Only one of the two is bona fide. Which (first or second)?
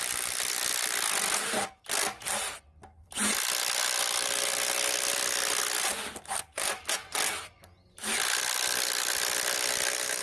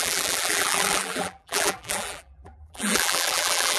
first